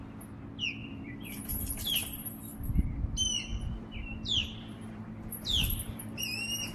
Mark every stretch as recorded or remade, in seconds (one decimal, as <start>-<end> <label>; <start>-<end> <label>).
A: 0.0-0.8 recorded; 0.8-1.7 remade; 1.7-3.5 recorded; 3.5-6.7 remade

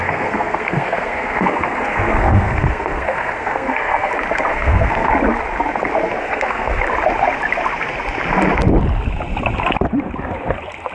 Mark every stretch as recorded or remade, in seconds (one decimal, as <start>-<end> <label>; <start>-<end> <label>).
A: 0.0-4.1 remade; 4.1-4.5 recorded; 4.5-5.1 remade; 5.1-6.2 recorded; 6.2-6.8 remade; 6.8-10.9 recorded